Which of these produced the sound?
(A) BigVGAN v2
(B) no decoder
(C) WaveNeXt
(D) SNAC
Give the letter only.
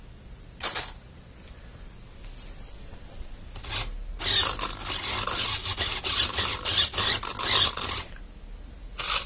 B